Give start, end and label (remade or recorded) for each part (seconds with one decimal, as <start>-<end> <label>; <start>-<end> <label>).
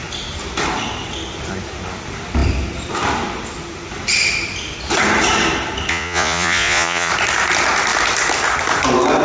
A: 0.0-5.9 recorded; 5.9-7.1 remade; 7.1-9.2 recorded